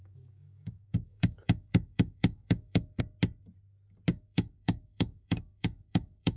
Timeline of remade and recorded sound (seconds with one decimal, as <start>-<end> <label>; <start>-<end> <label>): 0.0-3.0 remade; 3.0-4.1 recorded; 4.1-6.4 remade